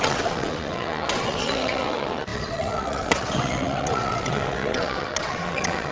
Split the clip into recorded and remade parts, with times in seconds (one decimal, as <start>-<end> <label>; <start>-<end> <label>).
0.0-5.9 remade